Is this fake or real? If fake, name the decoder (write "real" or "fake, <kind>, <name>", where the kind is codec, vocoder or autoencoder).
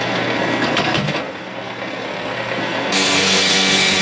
fake, codec, SNAC